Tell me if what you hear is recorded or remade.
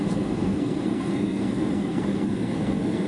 remade